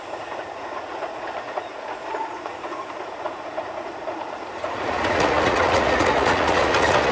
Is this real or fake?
fake